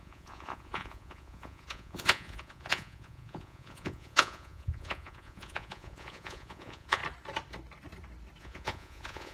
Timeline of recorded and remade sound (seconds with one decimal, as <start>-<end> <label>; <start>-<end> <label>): 0.0-7.0 remade; 7.0-8.4 recorded; 8.4-9.3 remade